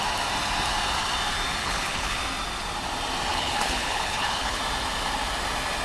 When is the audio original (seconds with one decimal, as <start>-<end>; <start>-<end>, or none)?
0.0-1.6; 2.2-3.3; 4.6-5.8

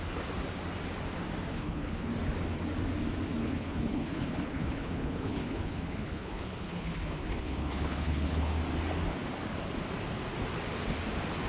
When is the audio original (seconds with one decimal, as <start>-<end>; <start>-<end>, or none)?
0.0-1.5; 2.1-3.4; 8.5-11.5